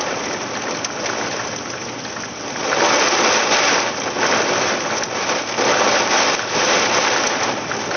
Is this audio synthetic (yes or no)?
no